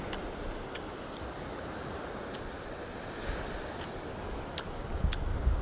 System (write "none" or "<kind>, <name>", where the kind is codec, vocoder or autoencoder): none